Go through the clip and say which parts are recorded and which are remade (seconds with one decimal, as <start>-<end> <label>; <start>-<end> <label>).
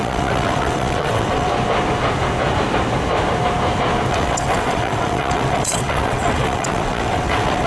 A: 0.0-1.5 remade; 1.5-4.1 recorded; 4.1-7.7 remade